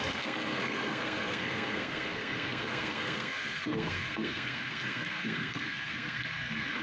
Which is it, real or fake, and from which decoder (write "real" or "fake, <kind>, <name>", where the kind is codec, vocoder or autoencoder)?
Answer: fake, codec, SNAC